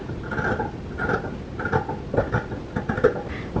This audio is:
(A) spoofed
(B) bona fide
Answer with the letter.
B